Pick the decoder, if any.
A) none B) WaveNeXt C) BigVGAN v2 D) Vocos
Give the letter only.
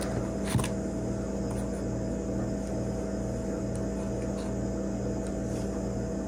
A